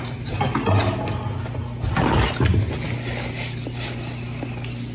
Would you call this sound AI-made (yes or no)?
no